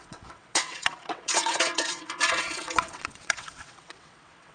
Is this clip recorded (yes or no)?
no